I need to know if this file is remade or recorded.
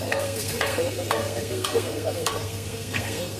remade